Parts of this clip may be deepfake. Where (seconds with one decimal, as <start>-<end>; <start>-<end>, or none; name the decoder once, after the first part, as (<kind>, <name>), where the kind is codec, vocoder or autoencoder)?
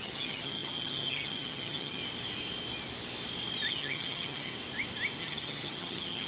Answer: 0.0-2.0 (vocoder, HiFi-GAN); 3.7-4.5; 5.2-6.3